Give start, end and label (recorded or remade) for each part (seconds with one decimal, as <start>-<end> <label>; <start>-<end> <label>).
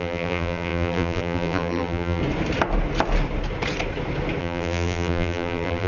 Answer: 0.0-2.2 remade; 2.2-4.4 recorded; 4.4-5.9 remade